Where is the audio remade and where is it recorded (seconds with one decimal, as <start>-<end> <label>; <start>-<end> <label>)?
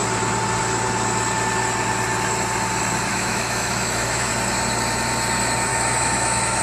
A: 0.0-3.1 recorded; 3.1-4.3 remade; 4.3-5.7 recorded; 5.7-6.6 remade